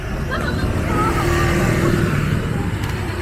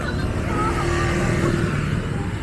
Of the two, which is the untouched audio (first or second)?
second